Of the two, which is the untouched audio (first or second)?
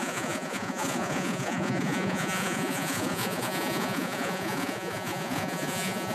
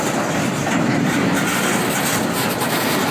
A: second